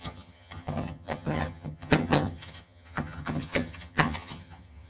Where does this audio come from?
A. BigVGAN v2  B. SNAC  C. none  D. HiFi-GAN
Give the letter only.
D